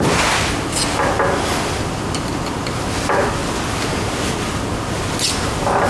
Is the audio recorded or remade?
recorded